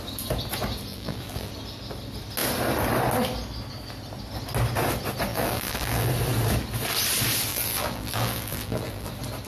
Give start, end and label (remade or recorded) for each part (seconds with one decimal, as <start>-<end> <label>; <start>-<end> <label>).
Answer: 0.0-0.9 recorded; 0.9-1.5 remade; 1.5-5.3 recorded; 5.3-6.1 remade; 6.1-7.5 recorded; 7.5-9.1 remade; 9.1-9.5 recorded